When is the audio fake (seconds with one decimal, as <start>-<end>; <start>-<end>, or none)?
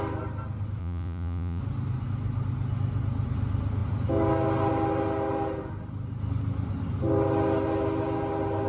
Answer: 0.8-1.6